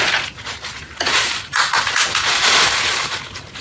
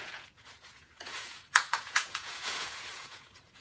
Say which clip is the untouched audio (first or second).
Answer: first